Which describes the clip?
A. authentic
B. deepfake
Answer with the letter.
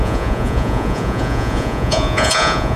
B